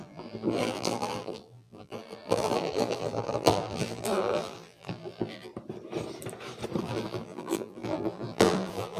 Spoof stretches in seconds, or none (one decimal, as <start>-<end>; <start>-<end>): 0.0-5.5; 6.8-9.0